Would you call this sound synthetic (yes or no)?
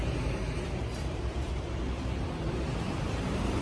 yes